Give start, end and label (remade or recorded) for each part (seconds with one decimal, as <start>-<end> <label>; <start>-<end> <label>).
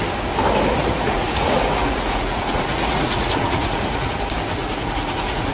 0.0-0.8 recorded; 0.8-4.1 remade; 4.1-4.6 recorded; 4.6-5.5 remade